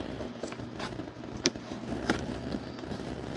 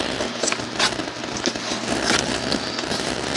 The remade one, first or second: first